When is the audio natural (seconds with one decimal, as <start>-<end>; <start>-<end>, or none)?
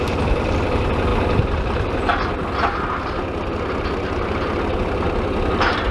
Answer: 0.0-5.9